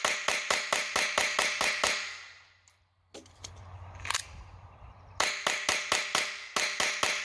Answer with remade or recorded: recorded